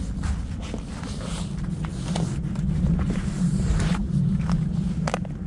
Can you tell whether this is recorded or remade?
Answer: recorded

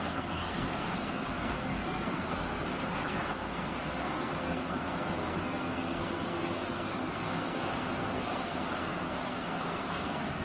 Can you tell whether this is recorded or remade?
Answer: remade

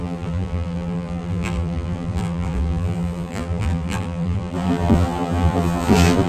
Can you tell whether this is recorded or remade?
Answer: remade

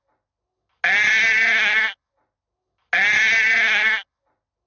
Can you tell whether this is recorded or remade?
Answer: recorded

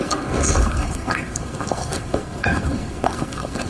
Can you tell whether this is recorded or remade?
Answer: remade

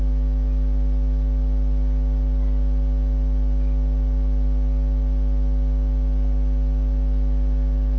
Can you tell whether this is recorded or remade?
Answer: recorded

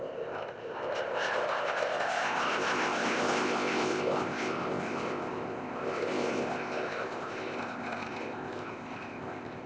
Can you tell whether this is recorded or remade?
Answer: remade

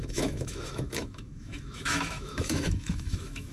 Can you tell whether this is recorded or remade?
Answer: remade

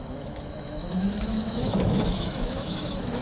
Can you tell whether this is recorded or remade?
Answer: remade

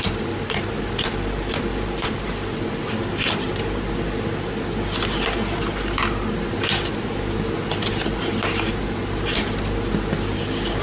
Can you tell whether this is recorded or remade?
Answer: recorded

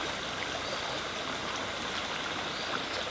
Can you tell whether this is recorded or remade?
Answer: recorded